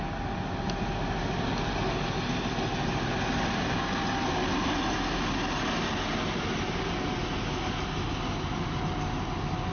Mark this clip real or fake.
real